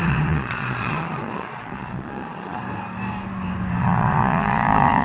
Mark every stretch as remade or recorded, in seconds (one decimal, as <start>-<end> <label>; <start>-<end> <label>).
0.0-2.6 remade; 2.6-3.8 recorded; 3.8-5.0 remade